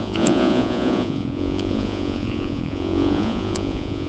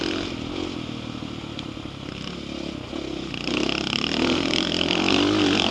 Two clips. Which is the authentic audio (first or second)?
second